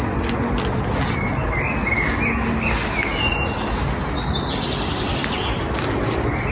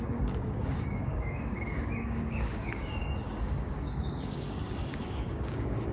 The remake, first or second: second